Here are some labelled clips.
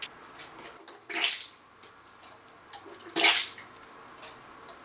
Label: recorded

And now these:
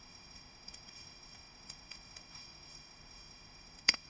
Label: remade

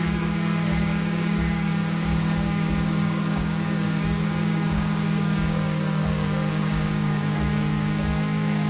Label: remade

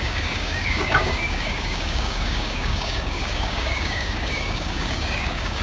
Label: remade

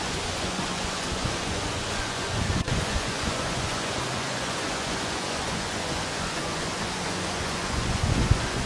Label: remade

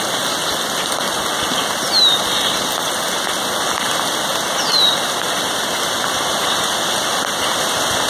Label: recorded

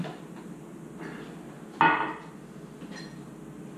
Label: recorded